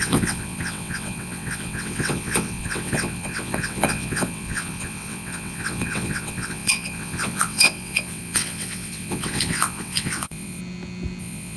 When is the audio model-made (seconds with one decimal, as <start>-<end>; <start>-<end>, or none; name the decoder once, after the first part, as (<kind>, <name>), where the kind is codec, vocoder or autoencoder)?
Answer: 0.0-10.6 (vocoder, WaveNeXt); 11.2-11.6